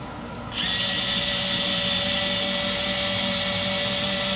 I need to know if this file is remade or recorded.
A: recorded